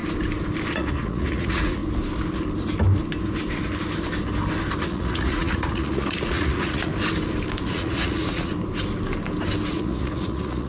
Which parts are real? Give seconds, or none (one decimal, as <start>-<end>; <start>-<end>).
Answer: 0.0-0.7; 1.8-4.8; 6.9-7.6; 8.5-9.7